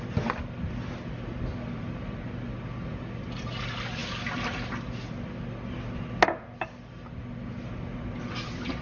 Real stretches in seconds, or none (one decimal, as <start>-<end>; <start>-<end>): 0.0-8.8